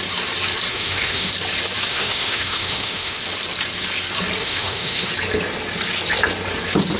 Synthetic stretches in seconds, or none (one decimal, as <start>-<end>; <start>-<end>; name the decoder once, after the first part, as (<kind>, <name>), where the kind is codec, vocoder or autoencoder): 0.7-1.3 (autoencoder, DAC-VAE); 1.9-3.2; 4.4-5.1